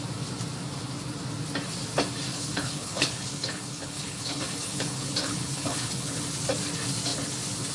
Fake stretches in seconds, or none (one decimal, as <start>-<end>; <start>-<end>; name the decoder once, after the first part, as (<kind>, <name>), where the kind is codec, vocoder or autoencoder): 2.3-6.2 (codec, HILCodec)